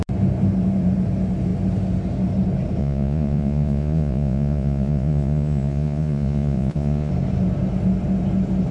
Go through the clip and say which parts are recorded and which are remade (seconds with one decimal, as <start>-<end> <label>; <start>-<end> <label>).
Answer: 0.0-2.8 recorded; 2.8-7.1 remade; 7.1-8.7 recorded